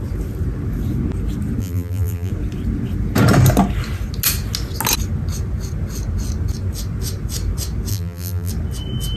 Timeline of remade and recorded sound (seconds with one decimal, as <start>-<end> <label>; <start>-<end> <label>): 0.0-1.6 recorded; 1.6-2.3 remade; 2.3-7.9 recorded; 7.9-8.5 remade; 8.5-9.2 recorded